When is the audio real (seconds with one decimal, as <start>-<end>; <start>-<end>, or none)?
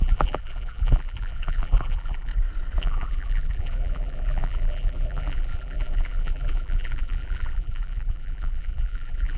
2.3-2.8